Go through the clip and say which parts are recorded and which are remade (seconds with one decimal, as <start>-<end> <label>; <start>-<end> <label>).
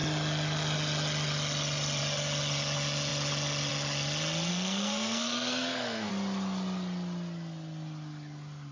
0.0-4.5 recorded; 4.5-6.1 remade; 6.1-8.7 recorded